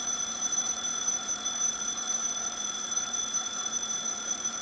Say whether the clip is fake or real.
fake